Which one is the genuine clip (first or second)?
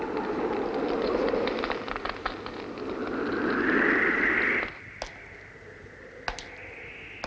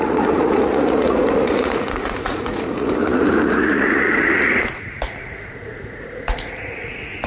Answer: first